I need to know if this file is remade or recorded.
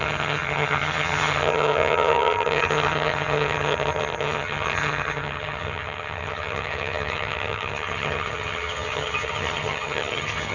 remade